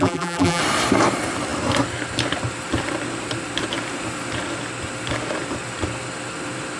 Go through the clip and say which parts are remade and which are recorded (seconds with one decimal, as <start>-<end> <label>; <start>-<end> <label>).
0.0-0.6 remade; 0.6-6.8 recorded